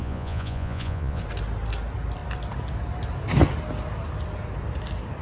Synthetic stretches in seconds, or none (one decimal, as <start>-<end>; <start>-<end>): 0.0-1.2